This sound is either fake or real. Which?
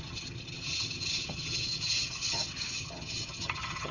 fake